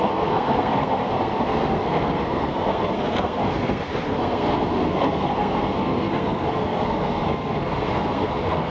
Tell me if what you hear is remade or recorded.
remade